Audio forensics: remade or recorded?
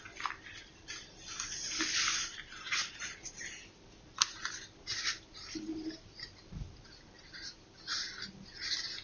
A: recorded